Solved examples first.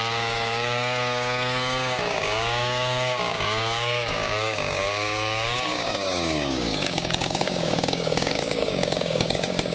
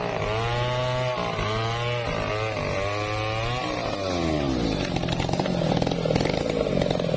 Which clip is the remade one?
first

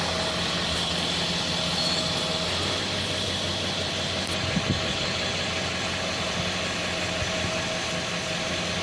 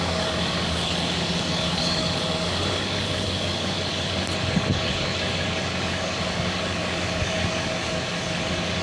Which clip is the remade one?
second